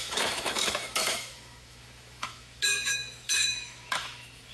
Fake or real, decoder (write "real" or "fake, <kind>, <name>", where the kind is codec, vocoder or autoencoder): fake, autoencoder, DAC-VAE